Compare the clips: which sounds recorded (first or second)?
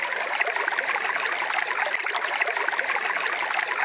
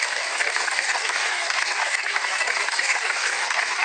first